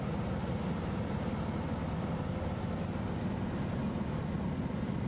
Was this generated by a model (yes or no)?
no